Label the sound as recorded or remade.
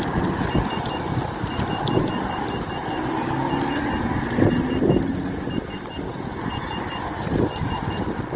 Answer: recorded